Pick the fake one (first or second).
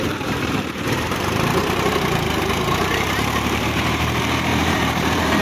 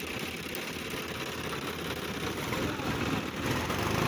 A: first